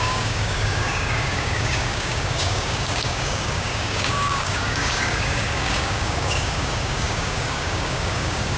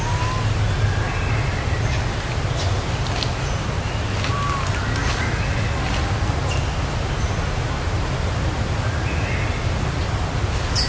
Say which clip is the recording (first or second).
second